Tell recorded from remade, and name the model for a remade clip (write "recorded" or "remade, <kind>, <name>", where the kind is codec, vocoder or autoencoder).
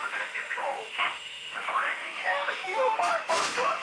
remade, autoencoder, DAC-VAE